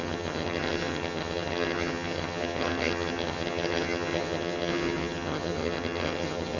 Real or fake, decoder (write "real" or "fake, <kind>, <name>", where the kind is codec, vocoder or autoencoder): fake, vocoder, HiFi-GAN